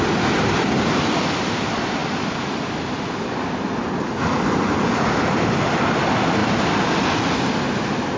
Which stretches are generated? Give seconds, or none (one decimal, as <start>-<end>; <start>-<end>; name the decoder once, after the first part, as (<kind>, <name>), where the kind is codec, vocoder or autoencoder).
none